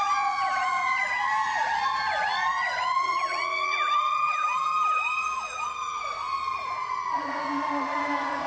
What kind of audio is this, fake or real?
fake